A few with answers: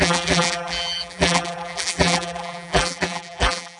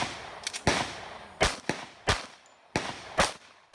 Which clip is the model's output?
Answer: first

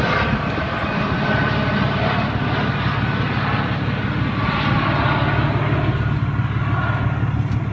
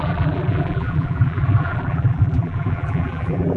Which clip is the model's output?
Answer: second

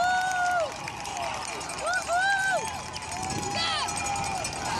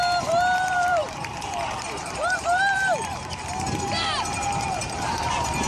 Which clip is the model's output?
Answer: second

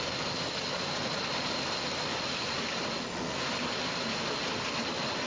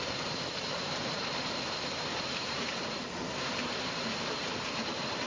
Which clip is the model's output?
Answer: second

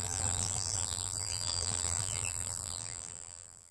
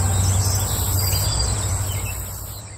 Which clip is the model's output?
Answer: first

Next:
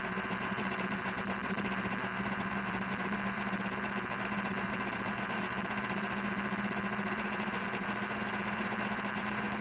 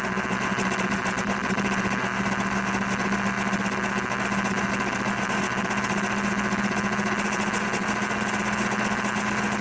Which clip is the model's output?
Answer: first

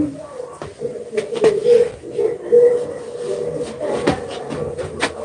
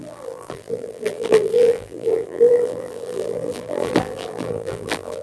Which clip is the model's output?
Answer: second